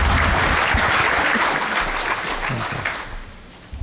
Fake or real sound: real